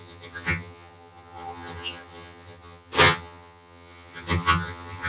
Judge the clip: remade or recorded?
remade